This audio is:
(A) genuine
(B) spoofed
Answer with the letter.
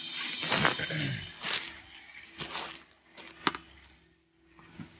A